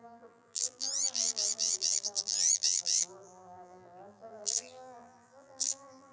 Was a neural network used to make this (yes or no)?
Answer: yes